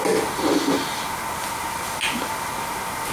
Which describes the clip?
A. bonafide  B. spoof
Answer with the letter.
A